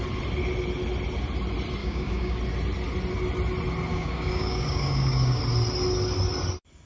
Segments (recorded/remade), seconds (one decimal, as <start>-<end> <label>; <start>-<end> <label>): 0.0-1.8 recorded; 1.8-2.4 remade; 2.4-3.9 recorded; 3.9-5.4 remade; 5.4-6.9 recorded